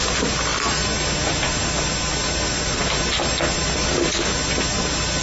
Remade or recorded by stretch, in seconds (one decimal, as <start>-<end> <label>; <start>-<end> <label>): 0.0-5.2 recorded